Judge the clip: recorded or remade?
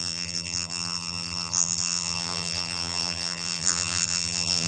remade